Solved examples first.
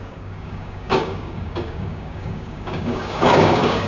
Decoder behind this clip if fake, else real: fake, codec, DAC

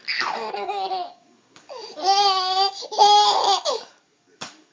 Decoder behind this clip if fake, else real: fake, codec, DAC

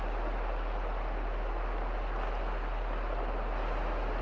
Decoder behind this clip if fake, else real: real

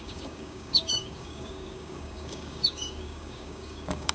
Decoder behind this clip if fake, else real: fake, codec, DAC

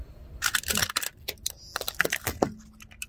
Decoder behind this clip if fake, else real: real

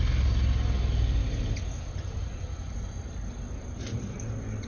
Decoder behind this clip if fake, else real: real